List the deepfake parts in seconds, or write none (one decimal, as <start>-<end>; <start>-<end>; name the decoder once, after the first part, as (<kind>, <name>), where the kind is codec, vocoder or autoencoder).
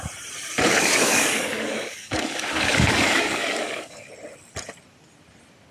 0.7-4.1 (codec, DAC)